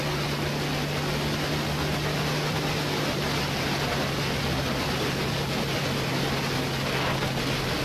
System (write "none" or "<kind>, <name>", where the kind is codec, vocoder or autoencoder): none